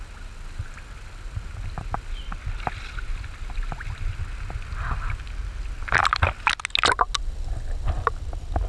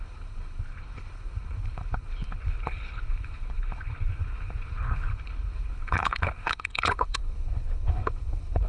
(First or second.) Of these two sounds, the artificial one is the second